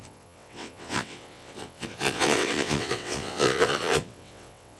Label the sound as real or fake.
fake